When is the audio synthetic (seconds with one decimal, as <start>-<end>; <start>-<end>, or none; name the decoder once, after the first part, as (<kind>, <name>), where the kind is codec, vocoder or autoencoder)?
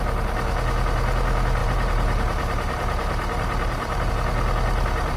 1.6-4.1 (vocoder, BigVGAN v2)